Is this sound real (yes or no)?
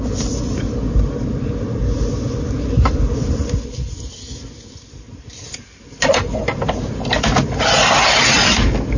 yes